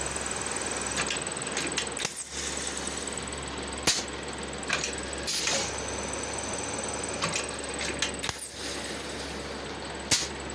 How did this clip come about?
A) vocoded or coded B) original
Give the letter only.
B